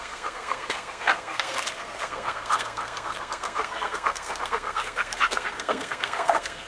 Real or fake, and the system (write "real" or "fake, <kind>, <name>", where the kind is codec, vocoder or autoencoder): fake, codec, SNAC